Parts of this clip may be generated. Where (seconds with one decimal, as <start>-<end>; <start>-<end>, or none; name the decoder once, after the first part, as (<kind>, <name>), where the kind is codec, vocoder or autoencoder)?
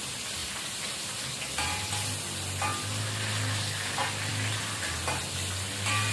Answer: none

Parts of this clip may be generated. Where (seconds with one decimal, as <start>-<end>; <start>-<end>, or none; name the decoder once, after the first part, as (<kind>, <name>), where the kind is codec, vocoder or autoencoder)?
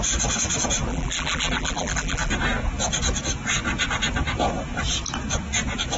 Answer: 0.9-2.3 (vocoder, BigVGAN v2)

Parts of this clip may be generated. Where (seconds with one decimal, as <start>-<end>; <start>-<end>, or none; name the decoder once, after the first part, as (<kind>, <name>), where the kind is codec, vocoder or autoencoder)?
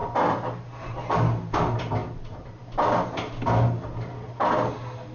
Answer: none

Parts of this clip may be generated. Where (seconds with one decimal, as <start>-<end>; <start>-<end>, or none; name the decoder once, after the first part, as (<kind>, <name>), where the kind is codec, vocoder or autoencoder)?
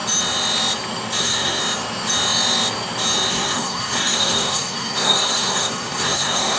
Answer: 1.2-1.6 (codec, SNAC); 3.3-6.6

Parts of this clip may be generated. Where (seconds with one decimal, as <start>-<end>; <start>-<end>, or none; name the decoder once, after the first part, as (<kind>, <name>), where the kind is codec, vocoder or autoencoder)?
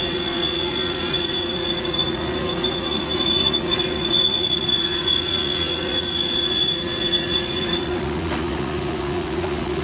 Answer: 0.0-9.8 (vocoder, Vocos)